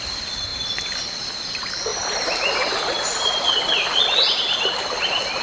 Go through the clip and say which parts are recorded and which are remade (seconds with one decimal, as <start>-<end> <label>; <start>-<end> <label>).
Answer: 0.0-5.4 recorded